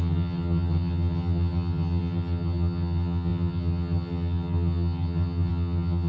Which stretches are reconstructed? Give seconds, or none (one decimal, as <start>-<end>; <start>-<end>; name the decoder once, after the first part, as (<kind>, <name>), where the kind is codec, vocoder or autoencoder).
0.0-6.1 (vocoder, HiFi-GAN)